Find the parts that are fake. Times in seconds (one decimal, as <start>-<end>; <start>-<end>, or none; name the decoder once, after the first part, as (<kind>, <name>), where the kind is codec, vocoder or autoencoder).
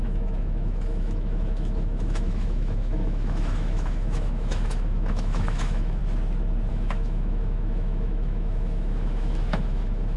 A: 0.0-6.0 (autoencoder, DAC-VAE); 6.7-10.2